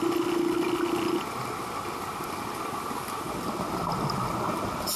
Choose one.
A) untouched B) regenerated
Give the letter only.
A